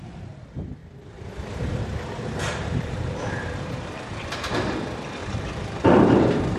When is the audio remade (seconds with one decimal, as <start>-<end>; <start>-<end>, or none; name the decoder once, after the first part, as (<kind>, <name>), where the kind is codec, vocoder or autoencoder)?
0.8-3.9 (vocoder, BigVGAN v2); 5.2-6.6